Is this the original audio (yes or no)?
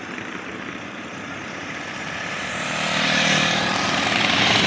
no